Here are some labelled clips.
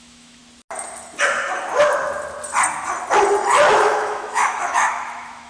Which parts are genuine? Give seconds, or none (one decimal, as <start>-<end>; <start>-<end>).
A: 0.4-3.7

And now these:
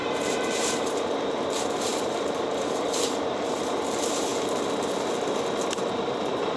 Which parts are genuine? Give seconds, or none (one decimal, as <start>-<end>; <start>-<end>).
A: 4.3-5.9

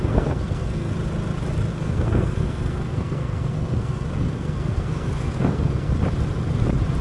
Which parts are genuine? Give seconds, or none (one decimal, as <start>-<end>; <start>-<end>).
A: 0.9-1.7; 5.9-7.0

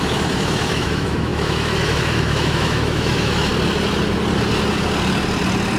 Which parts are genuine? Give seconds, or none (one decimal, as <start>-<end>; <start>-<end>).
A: 3.5-5.8

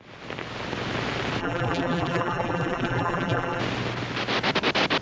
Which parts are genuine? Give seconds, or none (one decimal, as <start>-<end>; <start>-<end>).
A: 0.0-1.4; 3.6-5.0

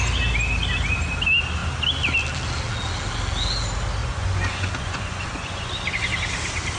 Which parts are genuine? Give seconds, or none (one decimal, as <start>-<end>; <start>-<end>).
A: 0.0-4.0; 5.7-6.8

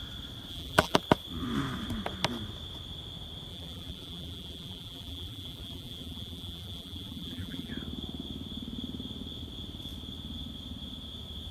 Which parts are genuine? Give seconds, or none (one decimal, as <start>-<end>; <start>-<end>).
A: 0.0-0.5; 1.0-3.5; 7.7-11.5

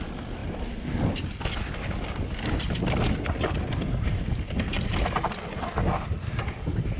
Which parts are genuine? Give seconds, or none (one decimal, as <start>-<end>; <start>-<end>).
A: 0.0-7.0